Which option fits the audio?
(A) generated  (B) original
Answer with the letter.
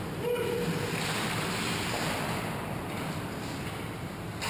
A